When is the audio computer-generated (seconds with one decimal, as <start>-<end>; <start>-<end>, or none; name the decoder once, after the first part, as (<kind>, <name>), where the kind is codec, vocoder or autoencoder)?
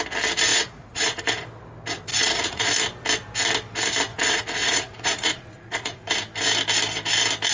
0.5-1.2 (vocoder, Vocos); 2.1-2.7; 4.1-6.0